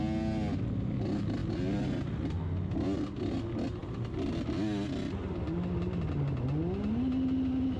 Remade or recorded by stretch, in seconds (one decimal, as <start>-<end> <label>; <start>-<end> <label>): 0.0-7.8 recorded